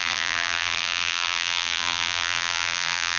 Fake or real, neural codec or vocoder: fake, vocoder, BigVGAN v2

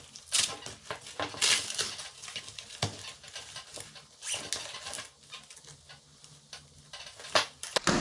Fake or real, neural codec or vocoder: real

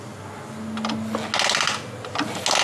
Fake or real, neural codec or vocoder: real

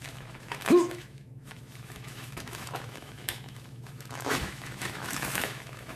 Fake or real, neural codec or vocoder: fake, autoencoder, DAC-VAE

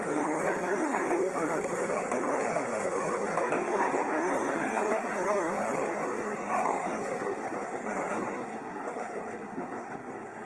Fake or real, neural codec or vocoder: fake, codec, SNAC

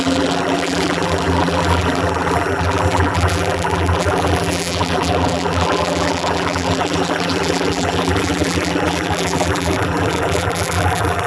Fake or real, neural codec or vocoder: fake, vocoder, BigVGAN v2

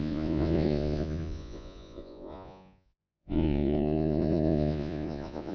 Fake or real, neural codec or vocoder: fake, vocoder, Vocos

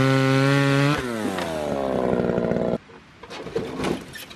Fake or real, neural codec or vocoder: real